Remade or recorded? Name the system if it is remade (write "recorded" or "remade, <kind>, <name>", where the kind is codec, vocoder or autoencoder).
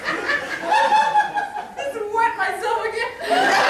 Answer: recorded